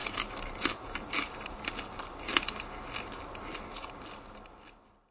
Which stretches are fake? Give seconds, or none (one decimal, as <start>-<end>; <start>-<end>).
0.0-2.4